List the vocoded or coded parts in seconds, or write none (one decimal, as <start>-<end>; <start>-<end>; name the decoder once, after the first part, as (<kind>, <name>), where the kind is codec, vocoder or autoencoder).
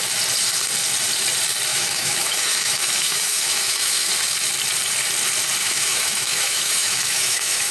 1.7-4.1 (autoencoder, DAC-VAE); 5.6-7.7